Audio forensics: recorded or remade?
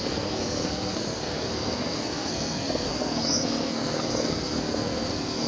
remade